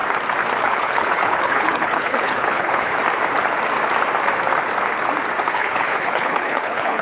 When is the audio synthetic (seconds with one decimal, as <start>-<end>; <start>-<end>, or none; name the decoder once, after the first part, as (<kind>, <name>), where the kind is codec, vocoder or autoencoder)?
0.6-2.9 (codec, HILCodec); 5.5-7.0